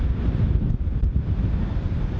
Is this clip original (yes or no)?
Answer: yes